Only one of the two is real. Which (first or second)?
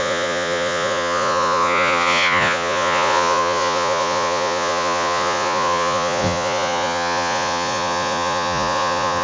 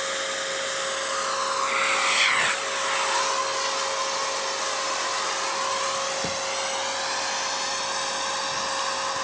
second